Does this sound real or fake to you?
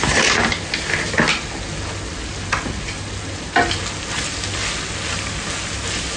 real